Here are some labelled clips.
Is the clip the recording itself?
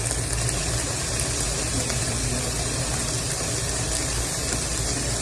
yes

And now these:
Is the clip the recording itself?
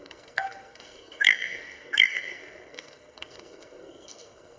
no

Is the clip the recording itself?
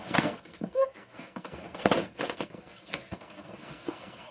no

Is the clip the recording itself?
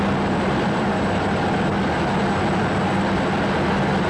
yes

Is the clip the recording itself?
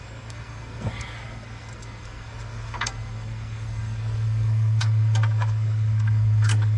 no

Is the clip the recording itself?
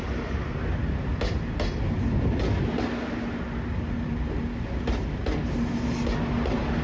yes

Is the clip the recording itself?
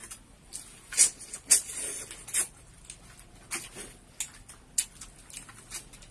yes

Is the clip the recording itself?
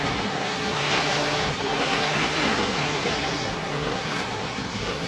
no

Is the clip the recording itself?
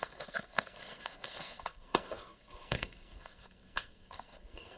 no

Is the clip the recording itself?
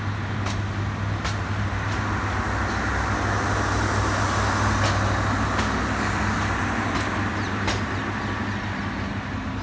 yes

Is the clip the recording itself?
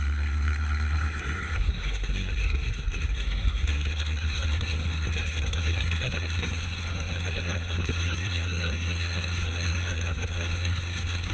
no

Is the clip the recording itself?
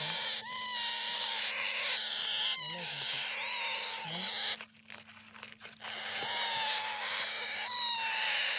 yes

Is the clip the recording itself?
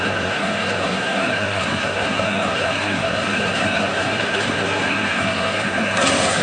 no